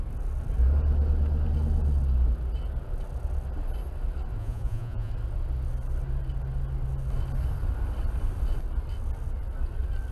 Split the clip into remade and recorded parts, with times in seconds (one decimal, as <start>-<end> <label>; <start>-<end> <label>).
0.0-4.4 recorded; 4.4-5.1 remade; 5.1-10.1 recorded